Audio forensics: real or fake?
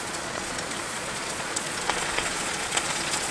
fake